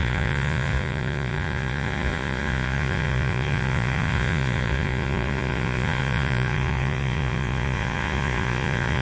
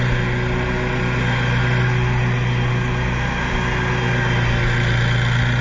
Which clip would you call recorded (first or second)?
second